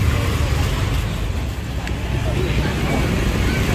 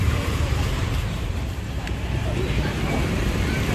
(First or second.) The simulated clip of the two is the second